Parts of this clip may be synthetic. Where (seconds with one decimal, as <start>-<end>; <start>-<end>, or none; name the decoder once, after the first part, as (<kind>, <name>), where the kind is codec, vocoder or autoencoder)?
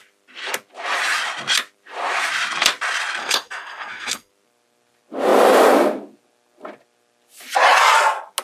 3.2-4.3 (codec, SNAC)